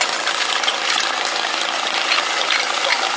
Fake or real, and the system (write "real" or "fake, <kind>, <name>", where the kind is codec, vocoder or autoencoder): real